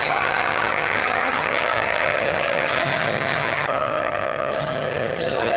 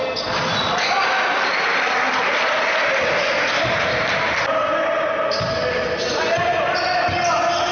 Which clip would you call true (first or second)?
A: second